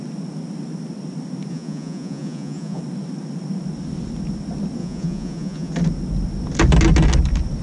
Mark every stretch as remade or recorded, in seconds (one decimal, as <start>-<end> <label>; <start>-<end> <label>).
0.0-1.5 recorded; 1.5-2.8 remade; 2.8-4.8 recorded; 4.8-5.7 remade; 5.7-7.6 recorded